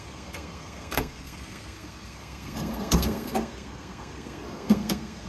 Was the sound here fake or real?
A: fake